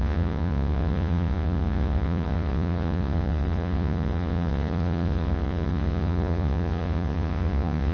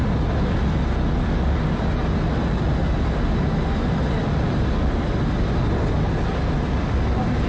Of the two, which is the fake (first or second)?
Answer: first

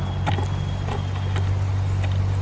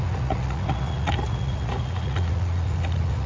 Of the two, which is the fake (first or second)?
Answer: second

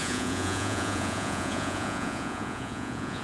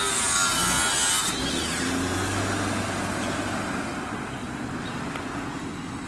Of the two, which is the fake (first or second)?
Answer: first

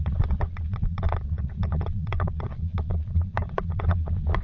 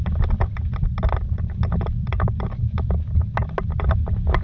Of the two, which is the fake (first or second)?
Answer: first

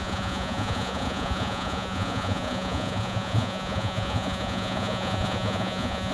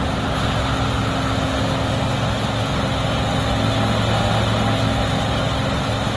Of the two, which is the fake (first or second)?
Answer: first